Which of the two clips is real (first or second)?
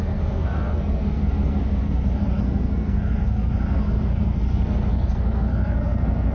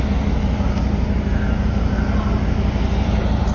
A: second